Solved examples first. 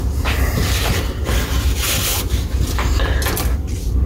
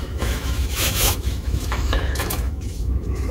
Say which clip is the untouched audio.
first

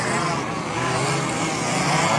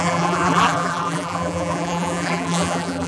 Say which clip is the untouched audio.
first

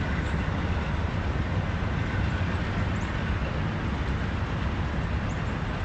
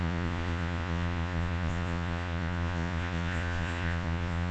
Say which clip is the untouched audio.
first